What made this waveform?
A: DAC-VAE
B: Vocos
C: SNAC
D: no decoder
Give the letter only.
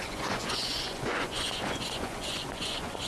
B